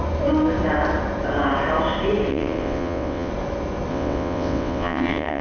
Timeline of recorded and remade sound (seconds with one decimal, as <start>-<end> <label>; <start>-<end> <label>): 0.0-2.3 recorded; 2.3-3.3 remade; 3.3-3.9 recorded; 3.9-5.4 remade